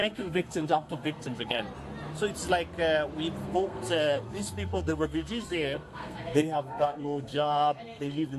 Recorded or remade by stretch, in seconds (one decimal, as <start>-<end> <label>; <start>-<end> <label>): 0.0-1.6 remade; 1.6-3.4 recorded; 3.4-8.4 remade